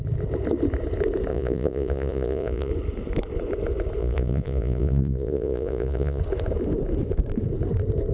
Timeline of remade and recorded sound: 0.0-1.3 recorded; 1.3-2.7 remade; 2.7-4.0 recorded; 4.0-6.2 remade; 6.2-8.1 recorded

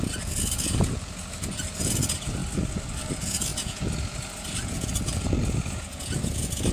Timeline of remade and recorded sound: 0.0-2.4 remade; 2.4-3.1 recorded; 3.1-6.7 remade

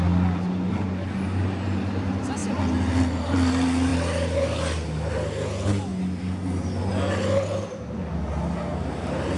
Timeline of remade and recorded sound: 0.0-9.4 recorded

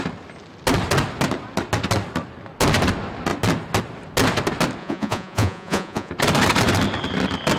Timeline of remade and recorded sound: 0.0-4.8 recorded; 4.8-6.1 remade; 6.1-7.6 recorded

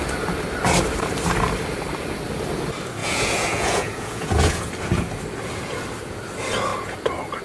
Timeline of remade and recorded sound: 0.0-3.0 recorded; 3.0-4.7 remade; 4.7-7.4 recorded

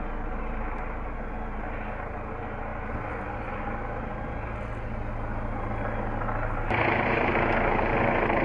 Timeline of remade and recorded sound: 0.0-8.4 recorded

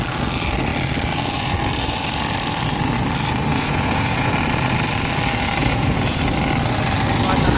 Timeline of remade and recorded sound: 0.0-3.5 recorded; 3.5-4.3 remade; 4.3-5.6 recorded; 5.6-6.2 remade; 6.2-7.6 recorded

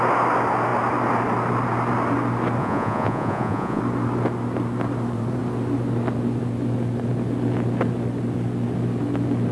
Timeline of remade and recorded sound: 0.0-2.6 recorded; 2.6-3.8 remade; 3.8-9.5 recorded